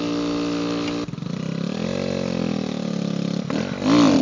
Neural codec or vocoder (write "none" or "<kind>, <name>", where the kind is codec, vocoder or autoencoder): none